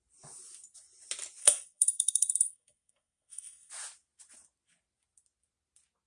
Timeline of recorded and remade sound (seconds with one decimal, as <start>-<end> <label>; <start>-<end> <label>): 0.0-1.4 recorded; 1.4-3.7 remade; 3.7-6.1 recorded